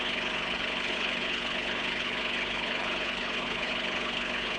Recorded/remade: remade